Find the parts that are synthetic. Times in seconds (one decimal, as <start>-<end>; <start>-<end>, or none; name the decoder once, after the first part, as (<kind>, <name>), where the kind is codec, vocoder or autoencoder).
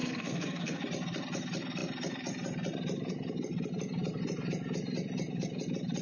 0.0-0.8 (codec, SNAC)